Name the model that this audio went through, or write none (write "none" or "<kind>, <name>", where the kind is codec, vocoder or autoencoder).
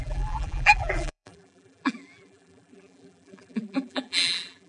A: vocoder, BigVGAN v2